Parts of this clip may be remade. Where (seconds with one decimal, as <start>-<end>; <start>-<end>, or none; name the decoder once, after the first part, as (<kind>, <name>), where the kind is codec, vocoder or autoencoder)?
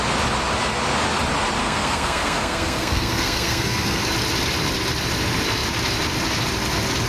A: 1.6-4.0 (codec, SNAC)